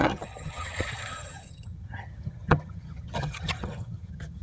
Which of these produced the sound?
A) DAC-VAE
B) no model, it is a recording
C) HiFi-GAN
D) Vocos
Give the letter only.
C